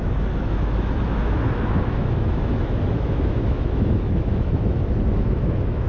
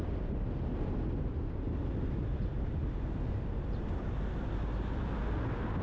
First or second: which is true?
second